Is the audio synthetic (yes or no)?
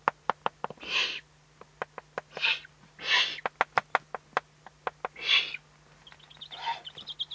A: no